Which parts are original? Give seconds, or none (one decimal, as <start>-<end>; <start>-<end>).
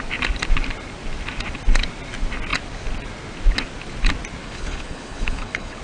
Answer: 0.0-4.4